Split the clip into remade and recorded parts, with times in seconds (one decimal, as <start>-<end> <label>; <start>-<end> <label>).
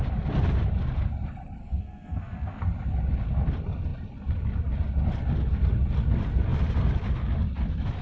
0.0-1.6 recorded; 1.6-2.6 remade; 2.6-8.0 recorded